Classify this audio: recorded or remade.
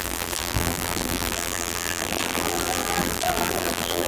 remade